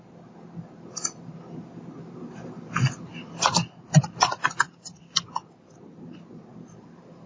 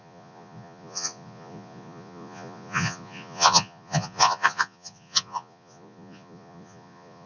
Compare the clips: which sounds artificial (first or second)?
second